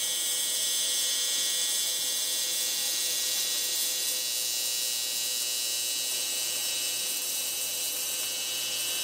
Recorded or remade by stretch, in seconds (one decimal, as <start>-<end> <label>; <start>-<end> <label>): 0.0-4.2 remade; 4.2-6.1 recorded; 6.1-9.0 remade

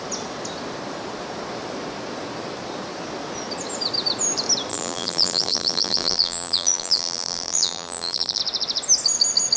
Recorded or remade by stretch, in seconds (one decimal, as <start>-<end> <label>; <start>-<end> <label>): 0.0-4.7 recorded; 4.7-8.4 remade; 8.4-9.6 recorded

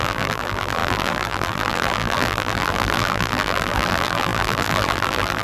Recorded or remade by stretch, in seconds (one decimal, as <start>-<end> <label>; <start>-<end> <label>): 0.0-5.4 remade

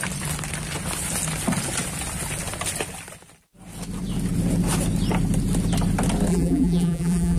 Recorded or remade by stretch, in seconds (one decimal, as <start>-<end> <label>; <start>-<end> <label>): 0.0-6.3 recorded; 6.3-7.4 remade

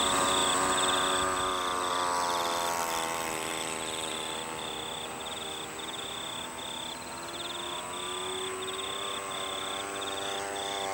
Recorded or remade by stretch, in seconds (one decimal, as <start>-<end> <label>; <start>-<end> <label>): 0.0-10.9 recorded